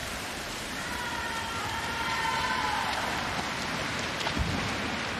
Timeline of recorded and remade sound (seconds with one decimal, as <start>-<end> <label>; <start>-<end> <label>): 0.0-3.1 remade; 3.1-5.2 recorded